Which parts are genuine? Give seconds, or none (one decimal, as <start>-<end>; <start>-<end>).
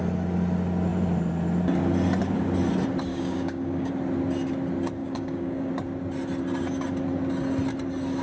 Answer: 0.0-3.1; 3.9-5.0; 5.7-8.2